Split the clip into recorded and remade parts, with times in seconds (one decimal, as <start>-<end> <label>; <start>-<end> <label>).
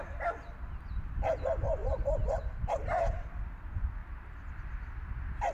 0.0-1.8 recorded; 1.8-3.4 remade; 3.4-4.0 recorded; 4.0-4.5 remade; 4.5-5.5 recorded